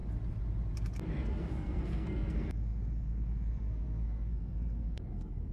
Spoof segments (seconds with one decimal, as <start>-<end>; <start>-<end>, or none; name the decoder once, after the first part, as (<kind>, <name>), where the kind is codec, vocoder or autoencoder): 1.1-5.5 (codec, SNAC)